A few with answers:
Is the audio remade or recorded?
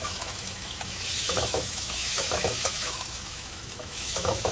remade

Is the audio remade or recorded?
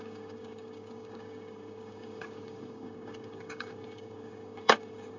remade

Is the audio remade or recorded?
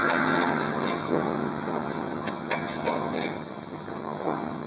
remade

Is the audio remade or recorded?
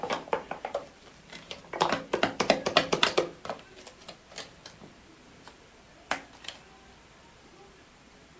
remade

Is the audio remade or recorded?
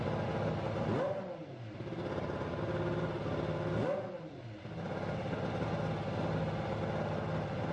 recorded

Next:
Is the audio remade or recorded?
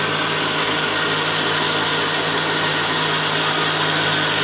recorded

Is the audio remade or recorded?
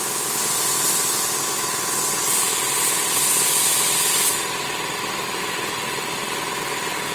recorded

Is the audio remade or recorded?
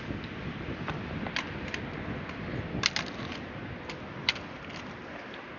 recorded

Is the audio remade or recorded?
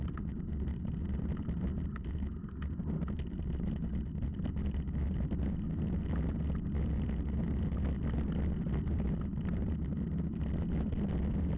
recorded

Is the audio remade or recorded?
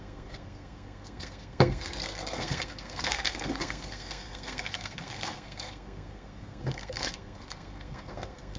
remade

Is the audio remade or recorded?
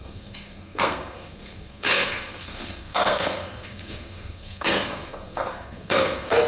remade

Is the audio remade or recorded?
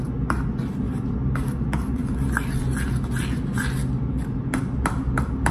recorded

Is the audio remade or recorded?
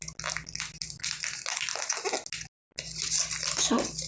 recorded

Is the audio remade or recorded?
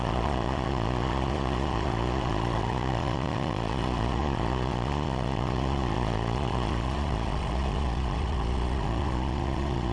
remade